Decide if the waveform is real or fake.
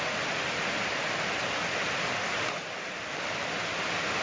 real